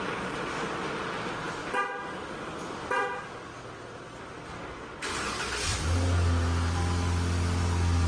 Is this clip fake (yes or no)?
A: no